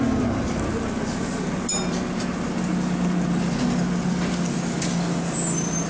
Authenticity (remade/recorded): recorded